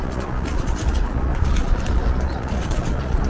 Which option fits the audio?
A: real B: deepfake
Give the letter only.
B